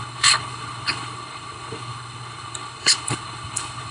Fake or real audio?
fake